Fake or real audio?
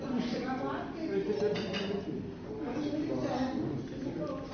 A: real